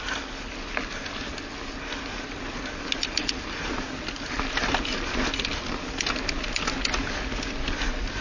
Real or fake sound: real